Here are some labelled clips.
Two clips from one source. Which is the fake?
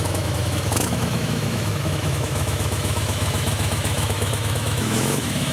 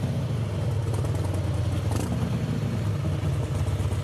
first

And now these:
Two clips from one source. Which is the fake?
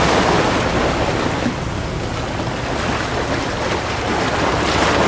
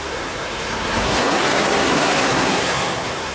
second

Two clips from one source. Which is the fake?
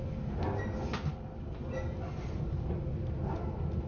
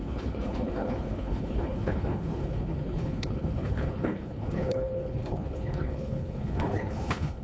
second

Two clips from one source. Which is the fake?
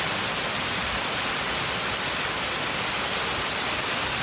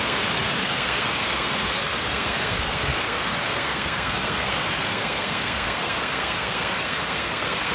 second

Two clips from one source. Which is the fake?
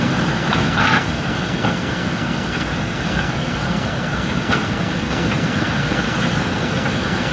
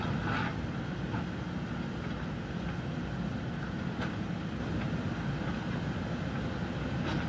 first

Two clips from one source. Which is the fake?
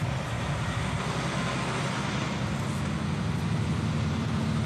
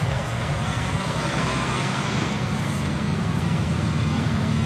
second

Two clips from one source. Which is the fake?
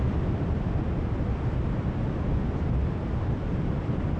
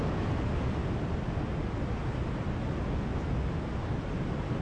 first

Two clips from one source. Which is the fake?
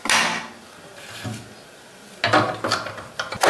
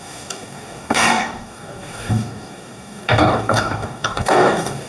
second